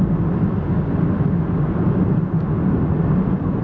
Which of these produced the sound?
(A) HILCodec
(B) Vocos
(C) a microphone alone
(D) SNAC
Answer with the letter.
C